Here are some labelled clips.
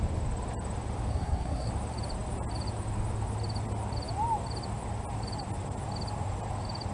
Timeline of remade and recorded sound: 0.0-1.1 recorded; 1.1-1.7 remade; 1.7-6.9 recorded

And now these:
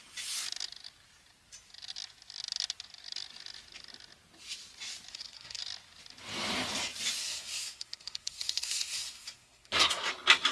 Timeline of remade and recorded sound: 0.0-5.1 recorded; 5.1-5.6 remade; 5.6-7.2 recorded; 7.2-10.1 remade; 10.1-10.5 recorded